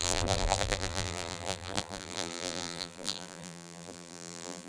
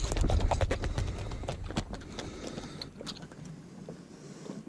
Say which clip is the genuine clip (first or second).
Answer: second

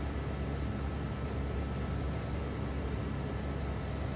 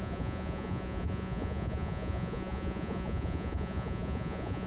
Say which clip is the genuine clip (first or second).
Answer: first